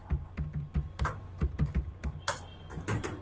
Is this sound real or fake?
real